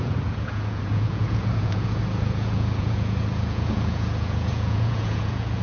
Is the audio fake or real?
fake